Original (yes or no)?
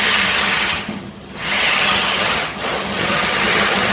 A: no